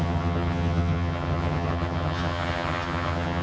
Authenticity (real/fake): fake